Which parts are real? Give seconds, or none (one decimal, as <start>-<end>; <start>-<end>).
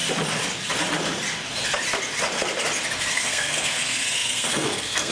0.0-3.1